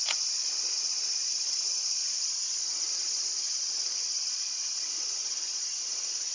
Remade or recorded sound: remade